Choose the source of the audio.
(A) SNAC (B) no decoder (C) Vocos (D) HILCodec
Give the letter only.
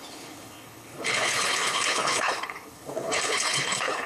D